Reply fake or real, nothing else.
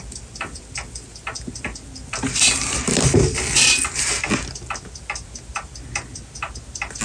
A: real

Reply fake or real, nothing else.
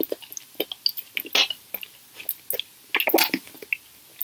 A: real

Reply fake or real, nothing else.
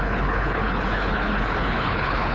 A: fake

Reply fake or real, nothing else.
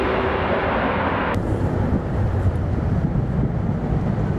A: real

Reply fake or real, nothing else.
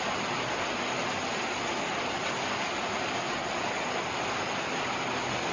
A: real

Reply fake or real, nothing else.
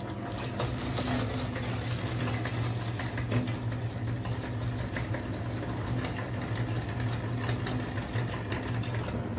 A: real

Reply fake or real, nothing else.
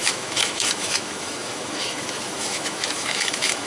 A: fake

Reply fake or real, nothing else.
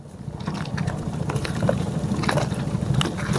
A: real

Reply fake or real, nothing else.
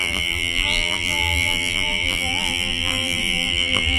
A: fake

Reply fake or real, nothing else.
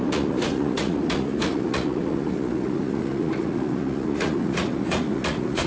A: fake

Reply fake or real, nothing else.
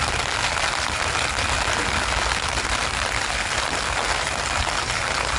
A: real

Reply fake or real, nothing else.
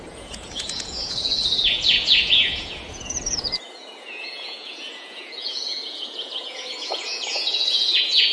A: fake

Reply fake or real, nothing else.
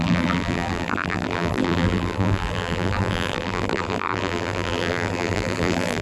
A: fake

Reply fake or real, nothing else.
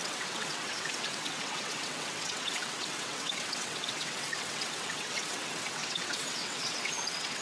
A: fake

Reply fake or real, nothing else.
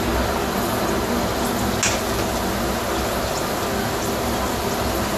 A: real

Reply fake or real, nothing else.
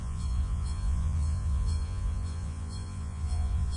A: fake